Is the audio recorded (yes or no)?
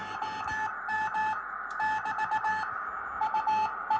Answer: yes